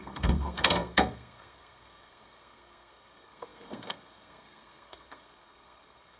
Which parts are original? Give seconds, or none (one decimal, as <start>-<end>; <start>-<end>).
none